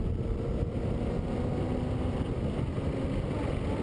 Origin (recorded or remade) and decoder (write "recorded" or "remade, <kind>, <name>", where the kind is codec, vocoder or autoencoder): recorded